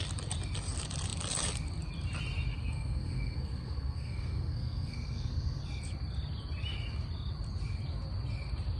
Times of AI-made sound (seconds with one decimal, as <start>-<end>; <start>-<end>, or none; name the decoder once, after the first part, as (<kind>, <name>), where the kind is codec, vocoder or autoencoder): 2.5-5.6 (codec, SNAC)